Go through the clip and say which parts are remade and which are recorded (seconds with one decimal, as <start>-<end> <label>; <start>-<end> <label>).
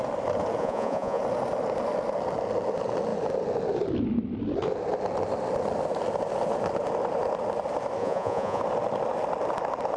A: 0.0-0.6 recorded; 0.6-1.2 remade; 1.2-8.0 recorded; 8.0-8.6 remade; 8.6-10.0 recorded